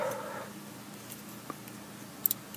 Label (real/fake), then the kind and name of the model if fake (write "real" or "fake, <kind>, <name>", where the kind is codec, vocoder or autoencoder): real